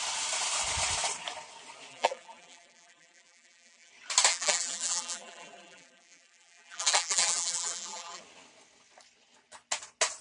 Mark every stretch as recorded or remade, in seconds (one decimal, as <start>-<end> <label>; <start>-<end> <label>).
0.0-1.9 recorded; 1.9-3.9 remade; 3.9-4.3 recorded; 4.3-8.2 remade; 8.2-10.2 recorded